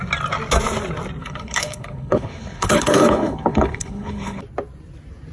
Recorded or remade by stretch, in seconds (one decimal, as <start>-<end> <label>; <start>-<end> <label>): 0.0-1.2 recorded; 1.2-4.4 remade; 4.4-5.3 recorded